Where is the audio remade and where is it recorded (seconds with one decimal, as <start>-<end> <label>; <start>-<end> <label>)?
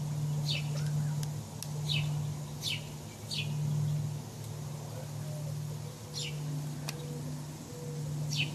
0.0-8.5 recorded